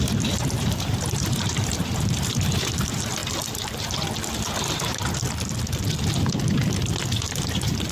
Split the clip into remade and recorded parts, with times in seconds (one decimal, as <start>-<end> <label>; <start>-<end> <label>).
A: 0.0-3.2 remade; 3.2-7.9 recorded